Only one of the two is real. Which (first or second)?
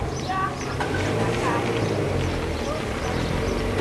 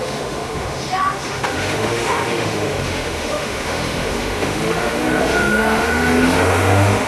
first